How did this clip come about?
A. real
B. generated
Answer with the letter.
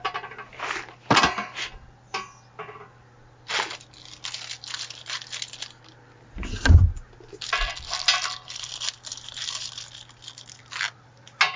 A